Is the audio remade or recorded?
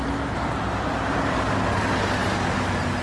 recorded